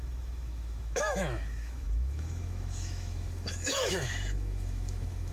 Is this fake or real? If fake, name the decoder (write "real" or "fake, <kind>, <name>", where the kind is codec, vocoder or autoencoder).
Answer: fake, autoencoder, DAC-VAE